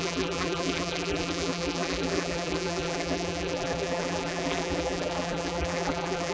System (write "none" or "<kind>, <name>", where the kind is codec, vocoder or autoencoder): vocoder, BigVGAN v2